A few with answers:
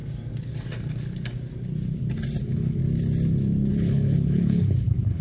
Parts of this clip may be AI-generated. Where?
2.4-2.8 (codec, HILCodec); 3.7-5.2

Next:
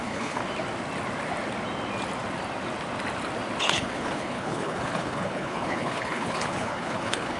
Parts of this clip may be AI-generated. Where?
0.0-0.4 (codec, HILCodec); 3.6-7.4

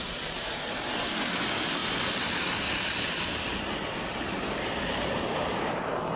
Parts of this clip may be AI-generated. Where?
none

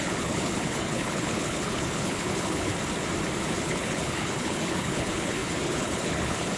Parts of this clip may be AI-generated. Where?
0.0-2.7 (codec, HILCodec); 3.4-6.6

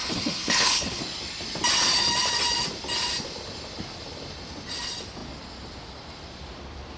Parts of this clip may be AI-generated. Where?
0.0-1.0 (codec, HILCodec)

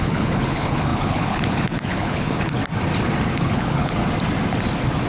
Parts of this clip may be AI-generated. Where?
0.0-2.6 (codec, HILCodec); 3.4-4.0

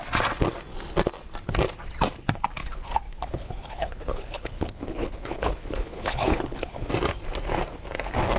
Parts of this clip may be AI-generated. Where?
2.6-6.9 (codec, HILCodec)